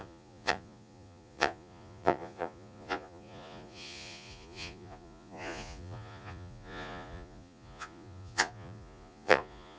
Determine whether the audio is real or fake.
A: fake